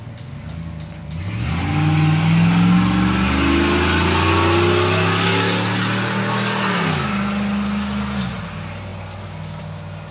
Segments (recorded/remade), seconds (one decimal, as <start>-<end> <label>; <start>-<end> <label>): 0.0-10.1 recorded